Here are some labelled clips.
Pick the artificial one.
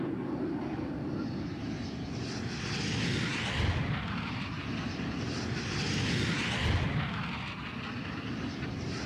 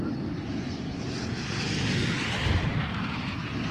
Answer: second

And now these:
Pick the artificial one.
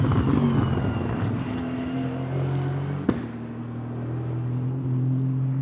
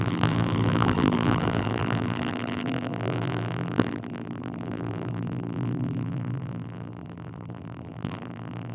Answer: second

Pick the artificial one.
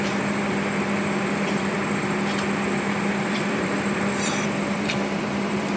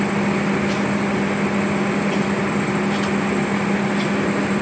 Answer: first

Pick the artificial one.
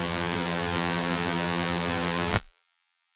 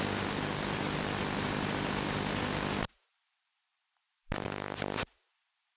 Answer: first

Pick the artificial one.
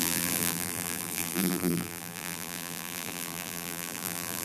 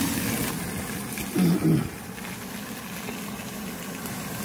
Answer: first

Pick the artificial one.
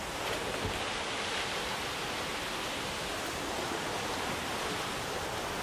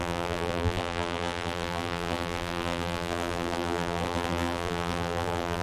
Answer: second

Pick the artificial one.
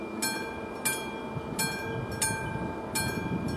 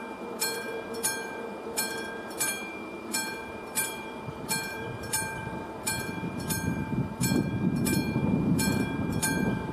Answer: second